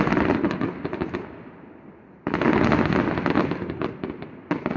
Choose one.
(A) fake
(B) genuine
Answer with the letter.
B